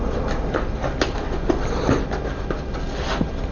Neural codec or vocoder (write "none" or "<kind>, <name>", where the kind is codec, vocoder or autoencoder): none